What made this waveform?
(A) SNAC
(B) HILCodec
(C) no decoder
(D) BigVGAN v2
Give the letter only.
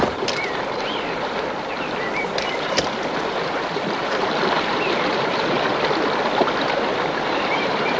D